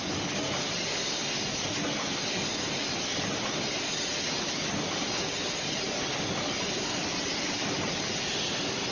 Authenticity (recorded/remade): recorded